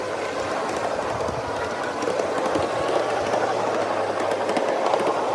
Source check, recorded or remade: recorded